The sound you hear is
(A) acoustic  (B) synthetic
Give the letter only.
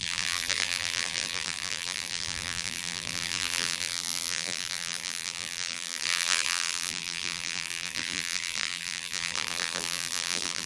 B